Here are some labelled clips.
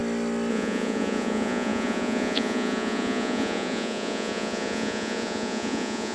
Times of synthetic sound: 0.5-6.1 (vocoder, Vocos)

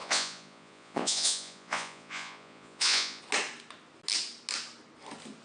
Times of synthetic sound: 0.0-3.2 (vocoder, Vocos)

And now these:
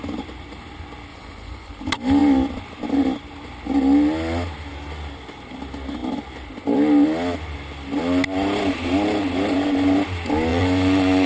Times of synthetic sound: 1.1-1.7 (vocoder, Vocos); 10.5-11.3

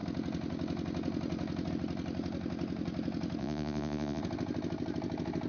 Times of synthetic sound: 3.4-4.2 (vocoder, Vocos)

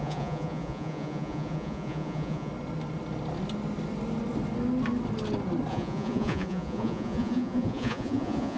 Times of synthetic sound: 0.0-2.5 (vocoder, Vocos); 5.7-8.6

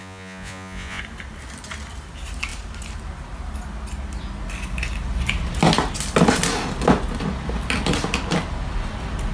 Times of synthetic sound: 0.0-1.0 (vocoder, Vocos)